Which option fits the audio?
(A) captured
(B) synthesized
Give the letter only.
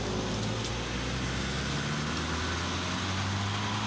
A